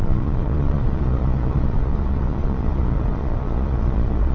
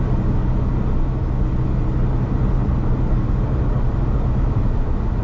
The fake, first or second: first